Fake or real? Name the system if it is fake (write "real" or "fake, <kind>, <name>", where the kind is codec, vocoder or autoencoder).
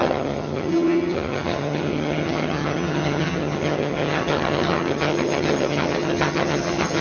fake, vocoder, HiFi-GAN